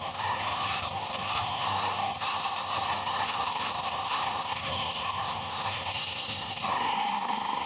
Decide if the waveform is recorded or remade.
remade